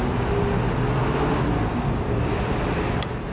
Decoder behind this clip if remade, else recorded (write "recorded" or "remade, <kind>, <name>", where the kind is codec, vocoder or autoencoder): recorded